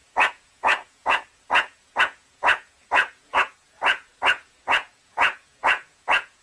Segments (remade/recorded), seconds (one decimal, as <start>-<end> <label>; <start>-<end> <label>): 0.0-6.4 remade

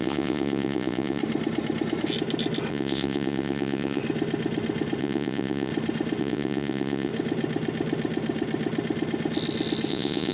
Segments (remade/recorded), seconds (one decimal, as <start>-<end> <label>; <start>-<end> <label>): 0.0-1.2 remade; 1.2-2.7 recorded; 2.7-4.0 remade; 4.0-5.0 recorded; 5.0-5.7 remade; 5.7-6.2 recorded; 6.2-7.1 remade; 7.1-9.9 recorded; 9.9-10.3 remade

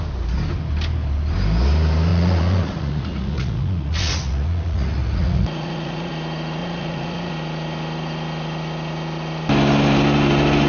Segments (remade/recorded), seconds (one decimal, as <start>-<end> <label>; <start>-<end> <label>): 0.0-2.1 recorded; 2.1-6.1 remade; 6.1-6.6 recorded; 6.6-7.3 remade; 7.3-10.7 recorded